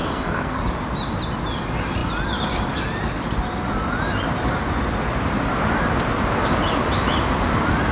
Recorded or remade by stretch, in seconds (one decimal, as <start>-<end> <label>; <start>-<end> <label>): 0.0-0.6 remade; 0.6-7.9 recorded